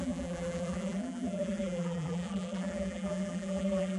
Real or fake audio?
fake